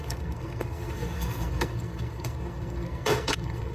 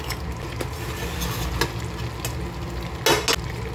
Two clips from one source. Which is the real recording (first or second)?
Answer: second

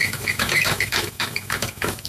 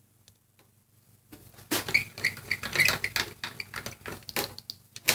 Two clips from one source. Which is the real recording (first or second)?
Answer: second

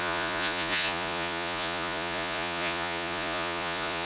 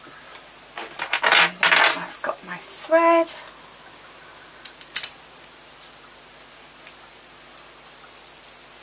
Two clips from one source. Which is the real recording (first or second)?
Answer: second